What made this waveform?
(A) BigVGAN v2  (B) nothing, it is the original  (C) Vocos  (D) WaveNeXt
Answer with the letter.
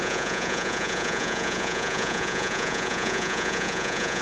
C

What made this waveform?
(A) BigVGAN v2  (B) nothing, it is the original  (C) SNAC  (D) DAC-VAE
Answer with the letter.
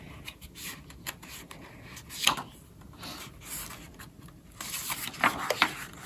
B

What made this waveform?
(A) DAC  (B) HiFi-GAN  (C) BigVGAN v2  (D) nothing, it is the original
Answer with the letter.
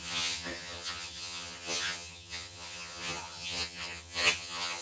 B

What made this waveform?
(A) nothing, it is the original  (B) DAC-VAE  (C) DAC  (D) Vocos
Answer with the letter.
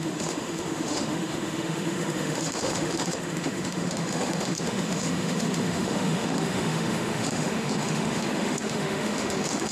B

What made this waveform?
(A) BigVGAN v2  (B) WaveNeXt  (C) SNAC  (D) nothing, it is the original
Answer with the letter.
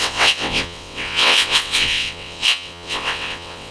B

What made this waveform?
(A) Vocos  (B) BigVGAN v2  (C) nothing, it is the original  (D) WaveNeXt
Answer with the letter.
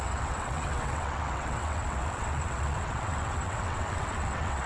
D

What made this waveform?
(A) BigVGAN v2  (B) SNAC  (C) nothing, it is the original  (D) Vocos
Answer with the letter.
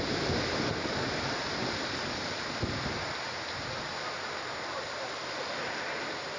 C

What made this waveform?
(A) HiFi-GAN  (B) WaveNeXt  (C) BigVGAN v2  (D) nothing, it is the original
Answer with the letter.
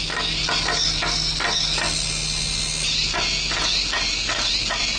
D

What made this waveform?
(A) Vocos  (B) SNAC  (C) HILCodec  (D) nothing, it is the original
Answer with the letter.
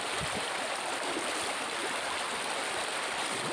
D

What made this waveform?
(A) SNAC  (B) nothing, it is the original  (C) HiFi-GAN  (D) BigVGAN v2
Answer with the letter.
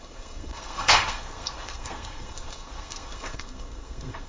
A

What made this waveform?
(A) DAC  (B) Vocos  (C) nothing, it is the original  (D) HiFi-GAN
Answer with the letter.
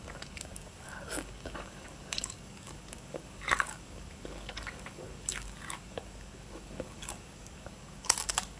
A